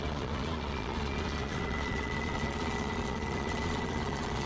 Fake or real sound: fake